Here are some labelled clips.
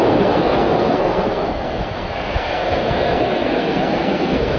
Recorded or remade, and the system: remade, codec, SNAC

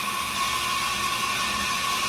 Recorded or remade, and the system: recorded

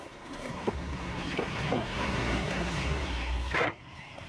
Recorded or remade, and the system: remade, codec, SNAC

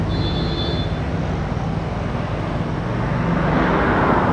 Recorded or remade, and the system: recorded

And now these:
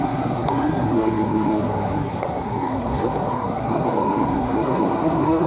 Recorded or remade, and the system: remade, codec, SNAC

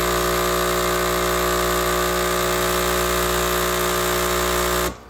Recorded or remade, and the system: recorded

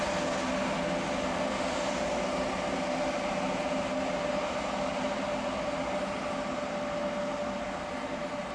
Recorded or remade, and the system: recorded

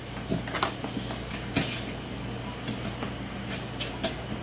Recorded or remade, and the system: recorded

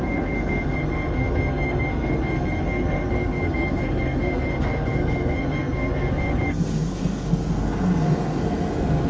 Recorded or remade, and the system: remade, codec, SNAC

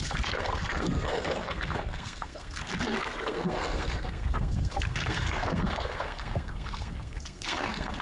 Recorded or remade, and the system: remade, codec, SNAC